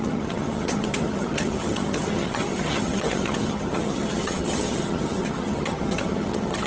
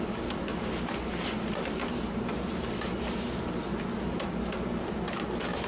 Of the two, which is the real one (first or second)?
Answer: second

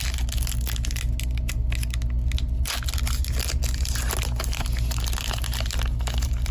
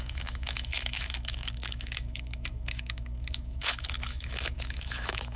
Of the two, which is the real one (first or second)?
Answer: first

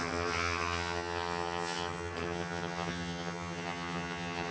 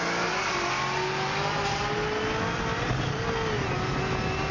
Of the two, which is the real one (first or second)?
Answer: second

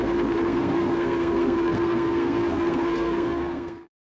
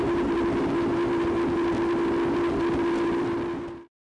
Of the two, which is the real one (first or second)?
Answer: second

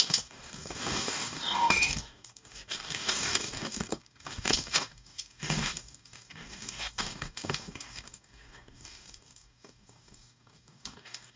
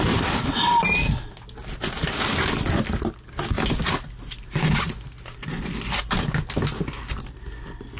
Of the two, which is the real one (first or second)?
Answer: second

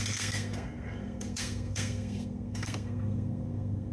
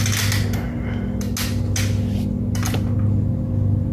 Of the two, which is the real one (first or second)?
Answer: second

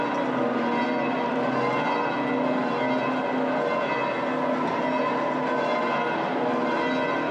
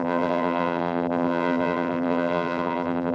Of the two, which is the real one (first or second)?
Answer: first